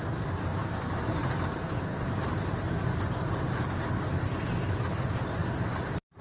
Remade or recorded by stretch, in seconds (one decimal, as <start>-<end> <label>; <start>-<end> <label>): 0.0-0.5 recorded; 0.5-4.2 remade; 4.2-5.4 recorded; 5.4-6.2 remade